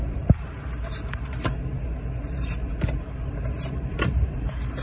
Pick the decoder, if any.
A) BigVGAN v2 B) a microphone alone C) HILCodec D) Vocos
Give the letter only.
A